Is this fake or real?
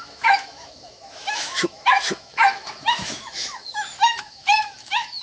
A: fake